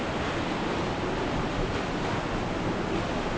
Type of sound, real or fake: fake